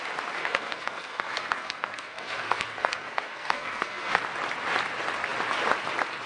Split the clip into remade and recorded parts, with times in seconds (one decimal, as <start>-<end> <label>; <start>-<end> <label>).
0.0-0.4 recorded; 0.4-4.2 remade; 4.2-6.3 recorded